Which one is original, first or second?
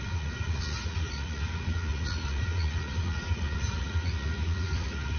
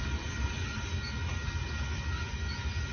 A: second